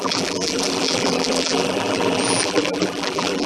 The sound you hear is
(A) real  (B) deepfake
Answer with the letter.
B